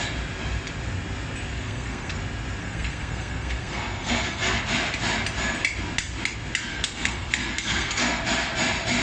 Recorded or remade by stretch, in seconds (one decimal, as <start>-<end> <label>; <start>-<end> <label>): 0.0-1.5 recorded; 1.5-2.2 remade; 2.2-2.6 recorded; 2.6-4.6 remade; 4.6-6.7 recorded; 6.7-8.2 remade; 8.2-9.0 recorded